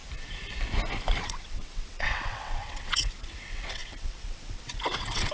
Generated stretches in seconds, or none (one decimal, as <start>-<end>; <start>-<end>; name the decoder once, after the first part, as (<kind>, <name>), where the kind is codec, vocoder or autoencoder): 1.2-5.3 (vocoder, WaveNeXt)